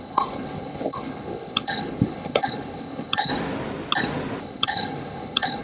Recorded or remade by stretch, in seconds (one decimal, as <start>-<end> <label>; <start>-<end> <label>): 0.0-3.3 remade; 3.3-4.4 recorded; 4.4-5.6 remade